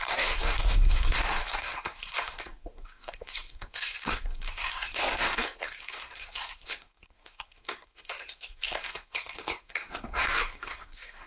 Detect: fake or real fake